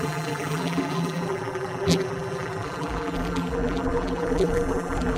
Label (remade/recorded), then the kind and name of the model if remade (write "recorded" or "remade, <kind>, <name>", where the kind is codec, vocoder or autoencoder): remade, vocoder, BigVGAN v2